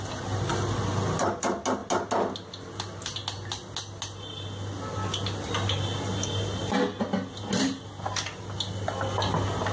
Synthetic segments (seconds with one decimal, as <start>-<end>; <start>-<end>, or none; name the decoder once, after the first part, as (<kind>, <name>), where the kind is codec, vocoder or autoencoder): none